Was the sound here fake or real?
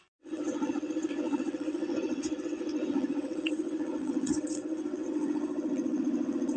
fake